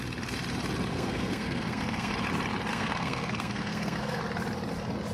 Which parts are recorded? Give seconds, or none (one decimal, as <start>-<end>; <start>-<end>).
0.0-0.9; 2.1-2.7; 4.2-5.1